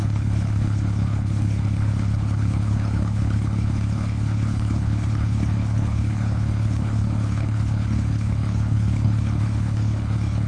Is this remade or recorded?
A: remade